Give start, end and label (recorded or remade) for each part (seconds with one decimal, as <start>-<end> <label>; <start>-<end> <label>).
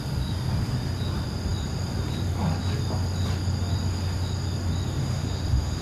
0.0-5.0 recorded; 5.0-5.8 remade